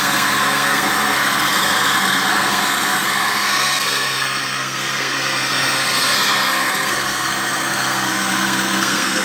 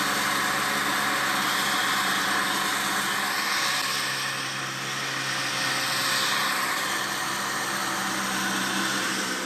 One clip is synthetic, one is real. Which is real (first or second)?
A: second